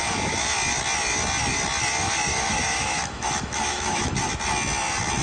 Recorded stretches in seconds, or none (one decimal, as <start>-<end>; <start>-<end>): 0.0-2.0; 4.1-5.2